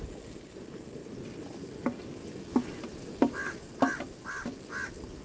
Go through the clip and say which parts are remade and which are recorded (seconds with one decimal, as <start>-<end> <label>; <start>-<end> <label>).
0.0-5.2 recorded